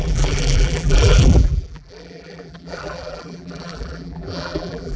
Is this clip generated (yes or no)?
yes